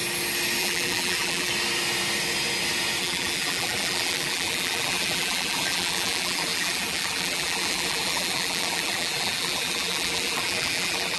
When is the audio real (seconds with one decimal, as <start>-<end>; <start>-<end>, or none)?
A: 0.0-0.6; 1.5-3.0

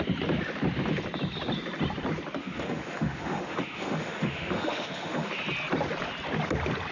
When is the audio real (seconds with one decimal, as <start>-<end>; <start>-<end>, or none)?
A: 0.0-2.4; 5.3-6.9

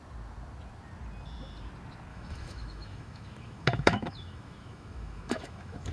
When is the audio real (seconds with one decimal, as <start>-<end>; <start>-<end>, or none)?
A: 0.0-2.1

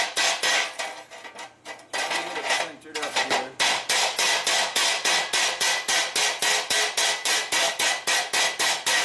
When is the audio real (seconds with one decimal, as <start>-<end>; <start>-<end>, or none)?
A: 0.0-9.0